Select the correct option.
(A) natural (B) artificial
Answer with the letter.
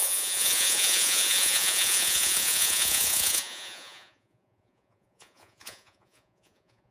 B